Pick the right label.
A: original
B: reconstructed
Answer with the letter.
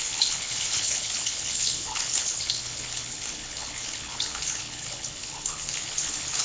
B